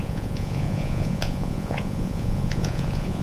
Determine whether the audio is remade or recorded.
remade